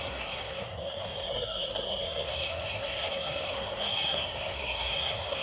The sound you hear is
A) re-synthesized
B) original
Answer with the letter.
A